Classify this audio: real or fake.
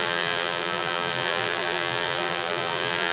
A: fake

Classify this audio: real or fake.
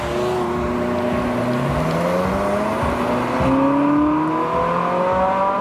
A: real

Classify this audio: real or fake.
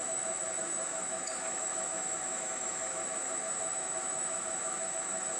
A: fake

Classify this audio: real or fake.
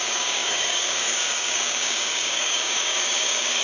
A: fake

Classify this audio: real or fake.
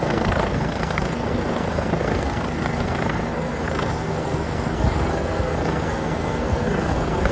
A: fake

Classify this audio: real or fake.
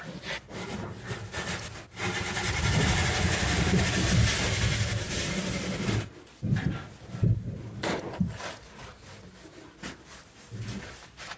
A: real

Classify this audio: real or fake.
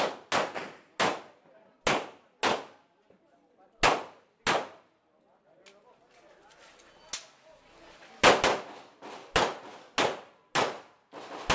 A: real